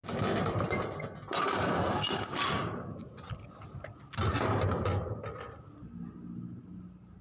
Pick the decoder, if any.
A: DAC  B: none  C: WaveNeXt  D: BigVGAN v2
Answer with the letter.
B